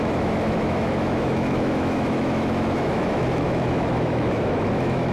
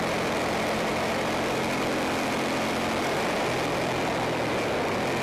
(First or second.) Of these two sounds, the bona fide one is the second